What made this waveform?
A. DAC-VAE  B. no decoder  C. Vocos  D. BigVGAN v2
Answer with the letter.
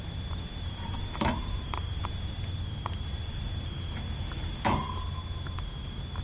B